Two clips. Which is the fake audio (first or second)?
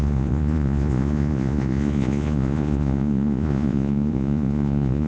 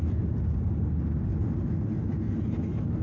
first